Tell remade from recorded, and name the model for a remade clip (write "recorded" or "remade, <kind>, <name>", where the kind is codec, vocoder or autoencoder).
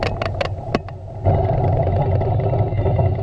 recorded